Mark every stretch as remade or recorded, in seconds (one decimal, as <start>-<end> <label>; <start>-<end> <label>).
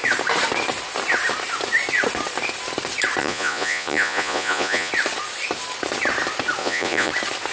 0.0-3.2 recorded; 3.2-4.9 remade; 4.9-6.6 recorded; 6.6-7.1 remade; 7.1-7.5 recorded